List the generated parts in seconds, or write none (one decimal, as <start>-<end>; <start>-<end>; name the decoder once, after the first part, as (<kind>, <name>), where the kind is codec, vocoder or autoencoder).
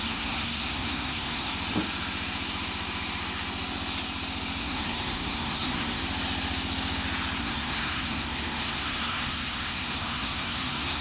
0.0-1.5 (codec, SNAC); 4.6-6.0; 7.4-11.0